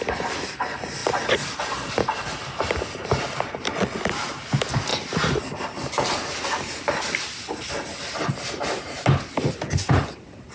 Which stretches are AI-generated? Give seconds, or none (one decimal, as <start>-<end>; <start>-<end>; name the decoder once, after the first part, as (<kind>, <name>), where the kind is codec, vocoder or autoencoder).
4.9-6.8 (vocoder, BigVGAN v2)